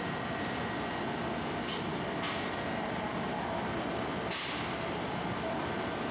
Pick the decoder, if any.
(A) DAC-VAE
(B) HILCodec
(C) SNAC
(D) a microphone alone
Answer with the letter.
D